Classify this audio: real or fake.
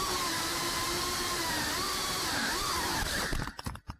fake